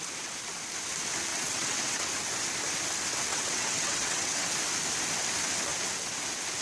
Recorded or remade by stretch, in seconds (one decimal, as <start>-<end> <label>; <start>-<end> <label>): 0.0-1.3 recorded; 1.3-2.1 remade; 2.1-3.3 recorded; 3.3-4.5 remade; 4.5-6.6 recorded